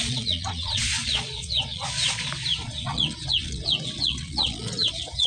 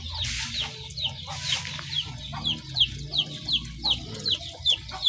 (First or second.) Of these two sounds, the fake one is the first